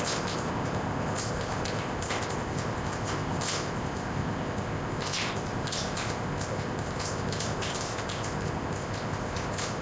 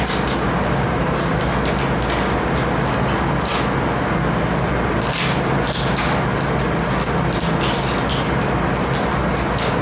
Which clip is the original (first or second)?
second